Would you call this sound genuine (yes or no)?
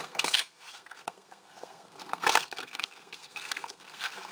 no